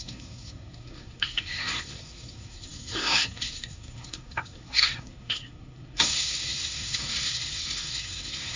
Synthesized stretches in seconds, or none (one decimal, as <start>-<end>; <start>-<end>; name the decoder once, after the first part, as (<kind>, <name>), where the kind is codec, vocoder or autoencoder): 0.0-8.6 (codec, SNAC)